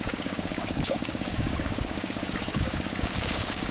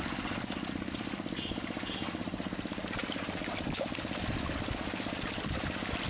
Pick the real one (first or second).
second